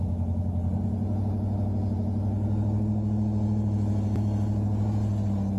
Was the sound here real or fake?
real